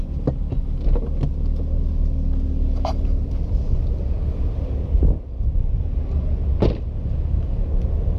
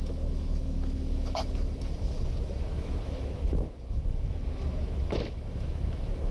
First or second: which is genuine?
first